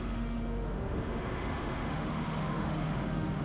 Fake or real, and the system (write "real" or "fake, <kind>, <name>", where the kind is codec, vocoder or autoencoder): fake, autoencoder, DAC-VAE